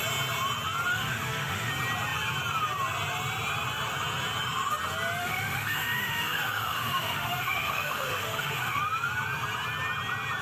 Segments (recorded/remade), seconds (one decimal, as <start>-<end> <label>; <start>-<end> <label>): 0.0-0.9 recorded; 0.9-1.7 remade; 1.7-5.2 recorded; 5.2-8.8 remade; 8.8-10.4 recorded